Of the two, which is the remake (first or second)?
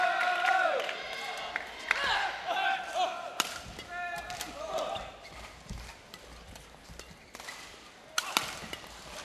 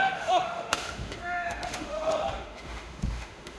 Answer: second